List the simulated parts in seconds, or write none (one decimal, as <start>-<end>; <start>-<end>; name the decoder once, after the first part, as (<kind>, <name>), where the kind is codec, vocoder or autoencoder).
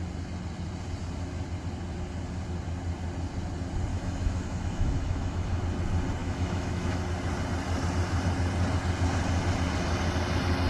3.9-5.6 (autoencoder, DAC-VAE); 6.2-7.0